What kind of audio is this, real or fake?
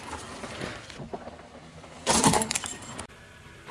fake